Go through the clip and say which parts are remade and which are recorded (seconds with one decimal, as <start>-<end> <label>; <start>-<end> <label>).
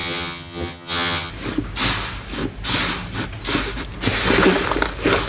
0.0-1.3 remade; 1.3-5.3 recorded